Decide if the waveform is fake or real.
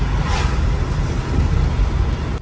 real